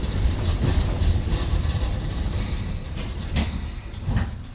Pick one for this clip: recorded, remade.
remade